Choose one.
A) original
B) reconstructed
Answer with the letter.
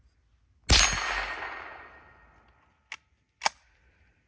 A